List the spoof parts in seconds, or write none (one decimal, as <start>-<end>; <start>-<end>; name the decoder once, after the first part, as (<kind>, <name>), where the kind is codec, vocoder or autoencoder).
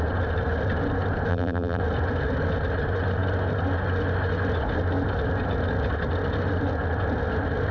1.3-1.8 (vocoder, BigVGAN v2)